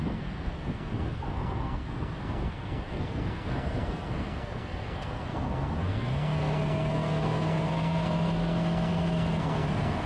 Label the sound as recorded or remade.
remade